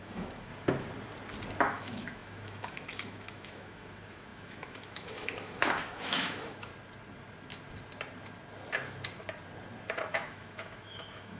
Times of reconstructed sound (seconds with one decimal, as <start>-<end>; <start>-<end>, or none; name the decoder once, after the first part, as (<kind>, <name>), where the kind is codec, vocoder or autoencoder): 0.0-0.5 (autoencoder, DAC-VAE); 1.6-6.7; 10.1-11.4